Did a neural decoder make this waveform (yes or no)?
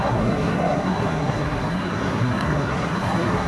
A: yes